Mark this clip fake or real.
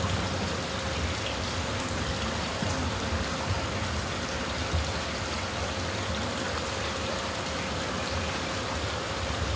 real